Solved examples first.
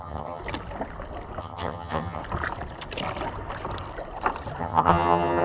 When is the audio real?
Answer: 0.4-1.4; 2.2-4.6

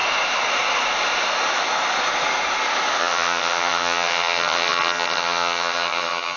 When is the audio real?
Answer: 0.0-3.0

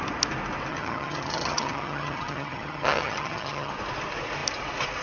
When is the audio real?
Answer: 0.0-0.7; 3.7-5.0

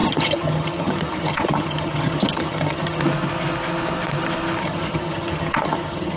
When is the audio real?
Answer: 3.0-4.6